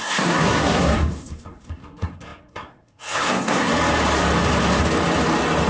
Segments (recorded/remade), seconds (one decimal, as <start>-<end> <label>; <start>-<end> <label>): 0.0-3.7 remade; 3.7-5.7 recorded